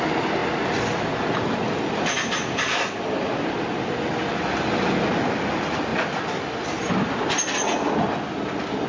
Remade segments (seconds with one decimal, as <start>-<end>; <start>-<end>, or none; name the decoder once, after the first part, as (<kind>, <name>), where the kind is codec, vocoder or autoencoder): none